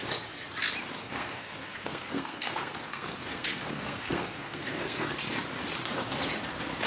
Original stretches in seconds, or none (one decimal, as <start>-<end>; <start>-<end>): 0.0-1.0; 5.1-6.9